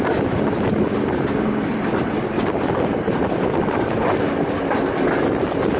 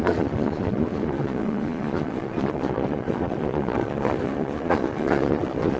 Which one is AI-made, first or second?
second